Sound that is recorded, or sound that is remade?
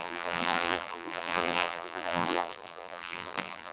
remade